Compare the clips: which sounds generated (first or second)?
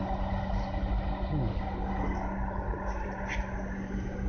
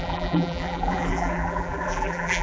second